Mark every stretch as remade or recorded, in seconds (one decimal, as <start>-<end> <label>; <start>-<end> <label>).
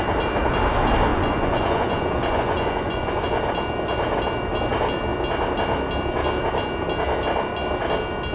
0.0-1.1 recorded; 1.1-3.4 remade; 3.4-8.3 recorded